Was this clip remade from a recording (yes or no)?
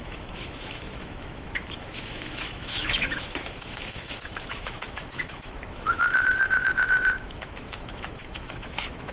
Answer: yes